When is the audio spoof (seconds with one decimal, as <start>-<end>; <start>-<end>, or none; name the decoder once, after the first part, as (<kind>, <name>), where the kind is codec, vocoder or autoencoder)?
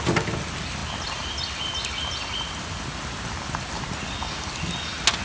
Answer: none